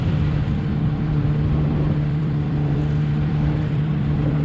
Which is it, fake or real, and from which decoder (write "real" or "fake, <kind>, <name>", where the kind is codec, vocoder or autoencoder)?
fake, vocoder, BigVGAN v2